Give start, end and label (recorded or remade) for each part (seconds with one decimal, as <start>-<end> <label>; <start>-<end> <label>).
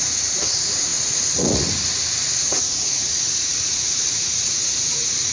0.0-5.3 remade